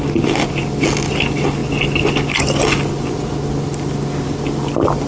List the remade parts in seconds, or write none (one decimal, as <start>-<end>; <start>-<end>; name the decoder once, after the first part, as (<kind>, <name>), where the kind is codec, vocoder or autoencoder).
none